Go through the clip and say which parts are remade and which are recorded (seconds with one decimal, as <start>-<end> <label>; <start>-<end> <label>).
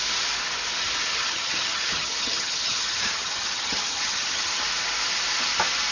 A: 0.0-1.1 recorded; 1.1-4.6 remade; 4.6-5.9 recorded